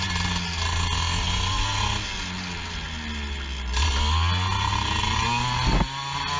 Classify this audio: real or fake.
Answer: real